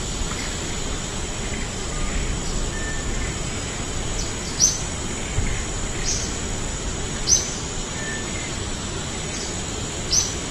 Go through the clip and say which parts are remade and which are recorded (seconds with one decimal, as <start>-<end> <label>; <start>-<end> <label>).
0.0-6.7 recorded; 6.7-9.5 remade; 9.5-10.5 recorded